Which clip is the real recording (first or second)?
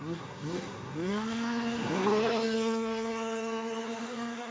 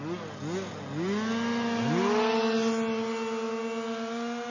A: second